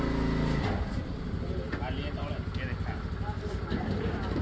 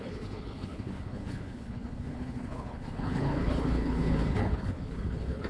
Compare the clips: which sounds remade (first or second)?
second